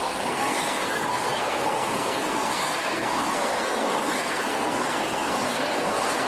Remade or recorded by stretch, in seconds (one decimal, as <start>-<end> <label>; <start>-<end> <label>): 0.0-6.3 remade